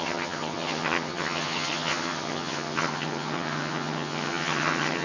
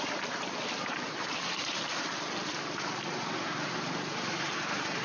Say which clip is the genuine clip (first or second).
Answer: second